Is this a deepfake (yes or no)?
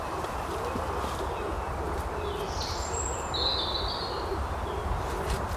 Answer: no